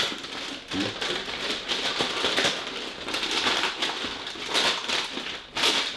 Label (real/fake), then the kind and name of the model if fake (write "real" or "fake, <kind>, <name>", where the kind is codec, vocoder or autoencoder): real